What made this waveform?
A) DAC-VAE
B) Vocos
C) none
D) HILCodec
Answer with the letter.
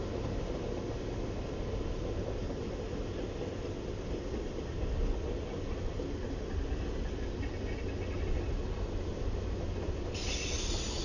C